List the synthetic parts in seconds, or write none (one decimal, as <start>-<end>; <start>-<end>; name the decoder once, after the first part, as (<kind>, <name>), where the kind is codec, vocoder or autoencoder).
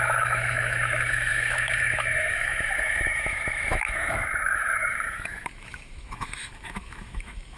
0.0-7.6 (autoencoder, DAC-VAE)